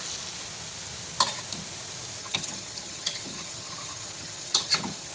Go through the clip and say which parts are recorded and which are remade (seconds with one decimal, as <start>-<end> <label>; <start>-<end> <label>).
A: 0.0-2.2 recorded; 2.2-5.1 remade